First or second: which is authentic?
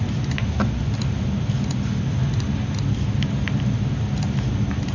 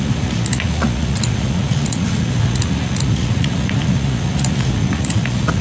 first